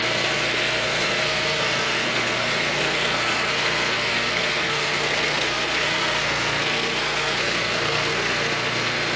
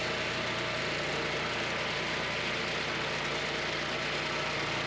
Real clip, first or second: second